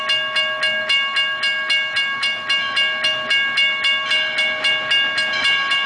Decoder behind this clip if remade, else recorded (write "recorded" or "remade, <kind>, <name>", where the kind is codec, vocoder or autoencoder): recorded